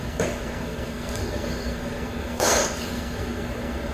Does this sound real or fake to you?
fake